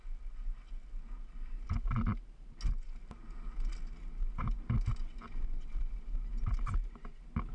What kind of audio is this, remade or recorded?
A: recorded